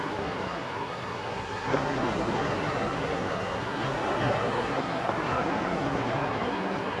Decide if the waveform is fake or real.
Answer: fake